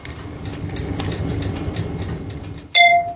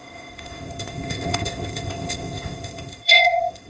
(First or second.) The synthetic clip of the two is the second